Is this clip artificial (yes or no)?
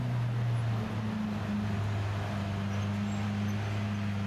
no